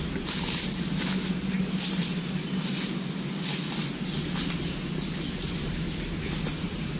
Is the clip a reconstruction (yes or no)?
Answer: no